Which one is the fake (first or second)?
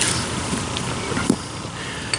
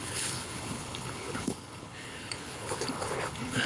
second